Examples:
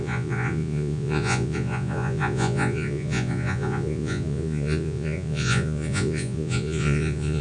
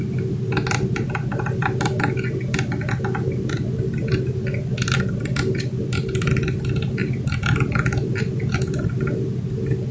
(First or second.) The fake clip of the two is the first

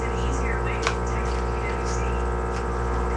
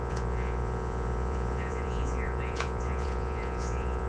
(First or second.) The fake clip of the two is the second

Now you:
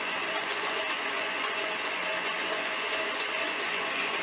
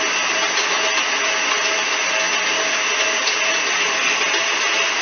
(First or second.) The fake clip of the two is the first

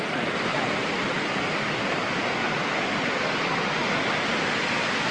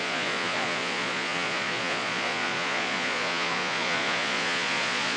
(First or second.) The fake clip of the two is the second